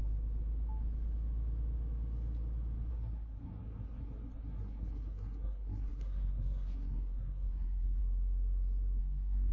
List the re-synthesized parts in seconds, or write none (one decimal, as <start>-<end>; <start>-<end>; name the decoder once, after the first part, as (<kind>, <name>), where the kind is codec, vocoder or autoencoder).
2.9-8.0 (codec, SNAC); 9.0-9.5